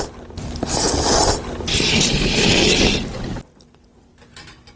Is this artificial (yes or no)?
no